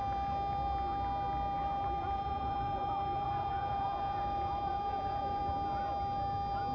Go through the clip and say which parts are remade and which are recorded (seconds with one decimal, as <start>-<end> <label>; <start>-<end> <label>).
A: 0.0-2.0 recorded; 2.0-5.4 remade; 5.4-6.7 recorded